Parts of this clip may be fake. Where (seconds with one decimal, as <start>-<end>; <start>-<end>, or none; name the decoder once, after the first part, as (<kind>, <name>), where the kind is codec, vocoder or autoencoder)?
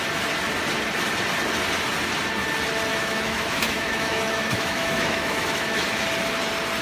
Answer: 2.9-6.0 (autoencoder, DAC-VAE)